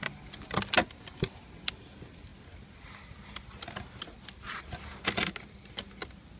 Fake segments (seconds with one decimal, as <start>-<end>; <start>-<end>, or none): none